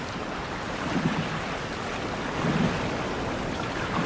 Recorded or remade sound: recorded